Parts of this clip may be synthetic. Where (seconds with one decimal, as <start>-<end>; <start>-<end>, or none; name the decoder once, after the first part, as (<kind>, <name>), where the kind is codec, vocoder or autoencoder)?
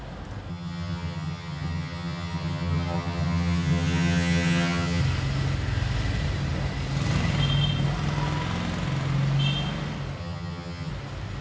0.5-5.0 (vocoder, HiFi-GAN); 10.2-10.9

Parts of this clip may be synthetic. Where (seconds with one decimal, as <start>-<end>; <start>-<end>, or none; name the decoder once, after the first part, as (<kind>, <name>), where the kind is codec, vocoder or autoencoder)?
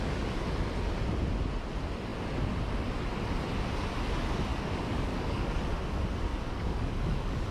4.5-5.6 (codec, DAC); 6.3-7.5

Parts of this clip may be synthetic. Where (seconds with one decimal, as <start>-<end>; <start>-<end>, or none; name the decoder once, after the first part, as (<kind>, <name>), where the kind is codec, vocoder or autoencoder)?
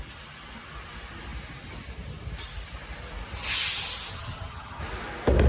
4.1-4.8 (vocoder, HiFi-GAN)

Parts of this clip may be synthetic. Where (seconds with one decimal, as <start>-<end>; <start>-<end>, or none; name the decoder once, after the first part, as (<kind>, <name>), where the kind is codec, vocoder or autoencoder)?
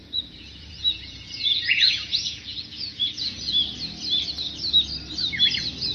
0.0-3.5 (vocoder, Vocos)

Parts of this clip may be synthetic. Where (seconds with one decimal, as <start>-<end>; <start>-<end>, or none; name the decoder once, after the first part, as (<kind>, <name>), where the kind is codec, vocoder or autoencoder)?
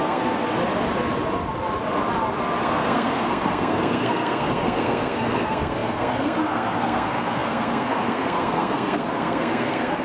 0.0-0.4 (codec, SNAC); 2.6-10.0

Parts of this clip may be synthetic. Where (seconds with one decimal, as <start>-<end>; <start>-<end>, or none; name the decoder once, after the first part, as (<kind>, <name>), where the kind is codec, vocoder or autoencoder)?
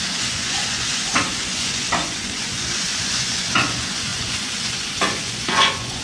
0.0-6.0 (vocoder, Vocos)